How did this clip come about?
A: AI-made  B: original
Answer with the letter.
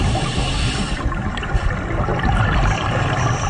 B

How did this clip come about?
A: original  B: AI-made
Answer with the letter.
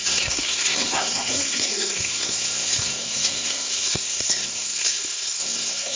B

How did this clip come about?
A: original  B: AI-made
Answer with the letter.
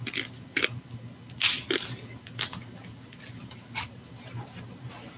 A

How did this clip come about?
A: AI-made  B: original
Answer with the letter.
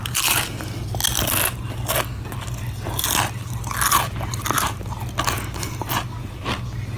B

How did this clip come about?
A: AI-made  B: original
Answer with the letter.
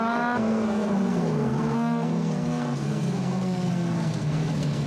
A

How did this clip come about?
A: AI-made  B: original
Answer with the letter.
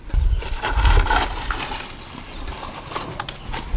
B